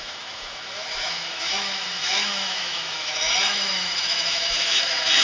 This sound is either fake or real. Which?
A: fake